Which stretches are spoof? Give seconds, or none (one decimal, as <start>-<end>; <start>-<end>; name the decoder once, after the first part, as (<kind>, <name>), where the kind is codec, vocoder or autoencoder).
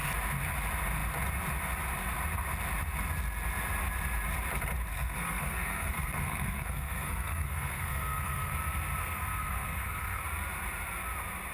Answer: 4.9-8.5 (codec, SNAC); 9.0-10.2